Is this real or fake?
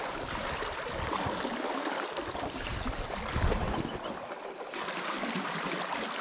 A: fake